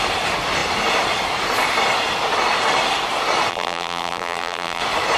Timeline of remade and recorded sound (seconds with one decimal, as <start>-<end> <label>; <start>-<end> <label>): 0.0-3.5 recorded; 3.5-4.8 remade; 4.8-5.2 recorded